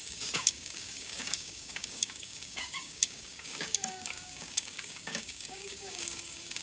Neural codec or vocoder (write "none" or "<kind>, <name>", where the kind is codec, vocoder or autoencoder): codec, DAC